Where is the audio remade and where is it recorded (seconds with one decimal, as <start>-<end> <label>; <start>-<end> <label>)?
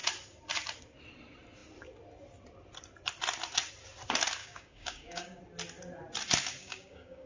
0.0-4.4 recorded; 4.4-5.4 remade; 5.4-6.6 recorded; 6.6-7.3 remade